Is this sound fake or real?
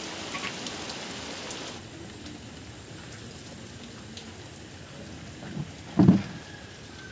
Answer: real